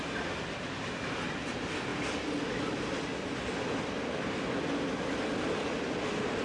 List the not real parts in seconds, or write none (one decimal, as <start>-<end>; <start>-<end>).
none